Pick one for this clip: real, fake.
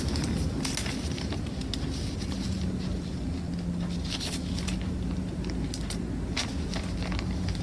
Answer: real